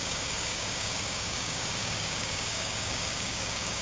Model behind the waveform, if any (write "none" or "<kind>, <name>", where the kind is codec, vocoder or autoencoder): codec, DAC